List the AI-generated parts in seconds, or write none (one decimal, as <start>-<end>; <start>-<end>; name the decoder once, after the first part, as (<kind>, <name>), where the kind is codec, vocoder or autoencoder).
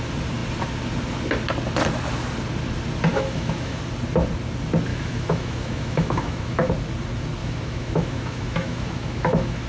3.1-3.8 (autoencoder, DAC-VAE); 4.9-6.7; 7.4-9.7